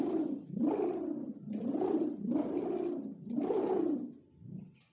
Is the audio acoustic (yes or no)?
yes